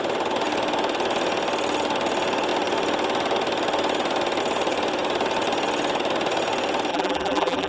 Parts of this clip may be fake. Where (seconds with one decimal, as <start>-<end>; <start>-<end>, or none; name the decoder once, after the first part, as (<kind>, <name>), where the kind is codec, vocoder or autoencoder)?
6.9-7.7 (vocoder, BigVGAN v2)